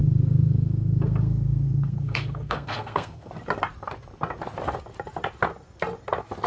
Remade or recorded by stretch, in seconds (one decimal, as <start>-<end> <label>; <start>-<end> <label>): 0.0-3.3 remade; 3.3-6.5 recorded